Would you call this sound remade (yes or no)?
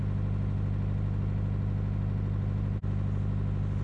no